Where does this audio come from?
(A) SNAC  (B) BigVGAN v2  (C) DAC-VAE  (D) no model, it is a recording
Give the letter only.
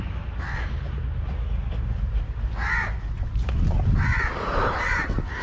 D